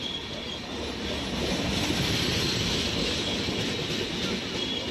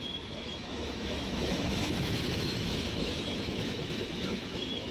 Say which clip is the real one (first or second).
first